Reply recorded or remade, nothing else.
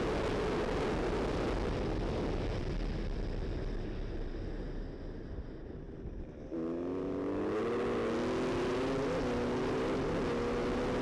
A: recorded